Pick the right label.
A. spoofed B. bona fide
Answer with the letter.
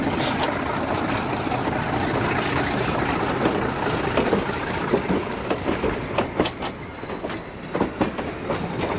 B